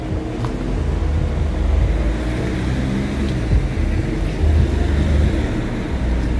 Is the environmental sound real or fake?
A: real